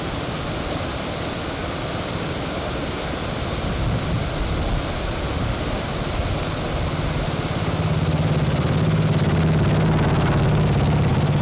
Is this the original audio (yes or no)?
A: yes